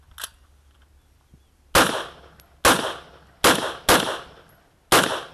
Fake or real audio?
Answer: real